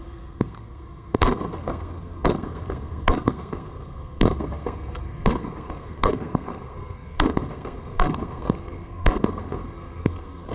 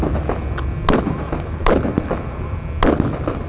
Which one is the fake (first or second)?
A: first